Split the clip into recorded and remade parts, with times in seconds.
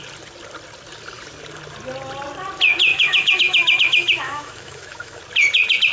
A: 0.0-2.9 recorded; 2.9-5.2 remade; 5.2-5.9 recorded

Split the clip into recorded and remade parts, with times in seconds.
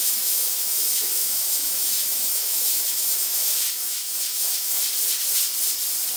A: 0.0-4.8 remade; 4.8-6.2 recorded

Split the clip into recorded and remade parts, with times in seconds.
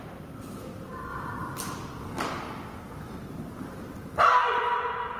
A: 0.0-5.2 recorded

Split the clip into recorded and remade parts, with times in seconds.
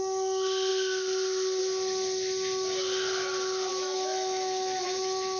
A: 0.0-3.7 recorded; 3.7-5.4 remade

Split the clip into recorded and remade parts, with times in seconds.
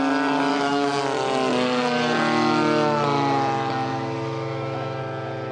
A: 0.0-0.5 recorded; 0.5-1.0 remade; 1.0-3.9 recorded; 3.9-5.0 remade; 5.0-5.5 recorded